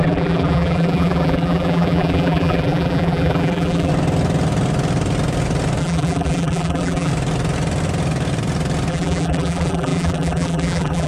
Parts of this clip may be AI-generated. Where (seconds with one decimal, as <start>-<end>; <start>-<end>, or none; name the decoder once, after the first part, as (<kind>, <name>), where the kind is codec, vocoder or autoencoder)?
0.0-3.9 (vocoder, BigVGAN v2); 5.8-7.1; 8.9-11.1